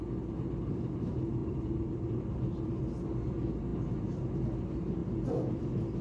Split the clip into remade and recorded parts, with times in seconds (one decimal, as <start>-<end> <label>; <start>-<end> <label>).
0.0-6.0 recorded